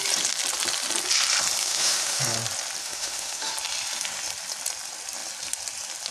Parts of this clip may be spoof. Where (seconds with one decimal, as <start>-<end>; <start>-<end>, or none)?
1.6-2.2; 2.8-3.5